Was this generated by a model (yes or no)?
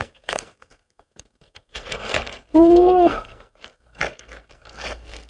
yes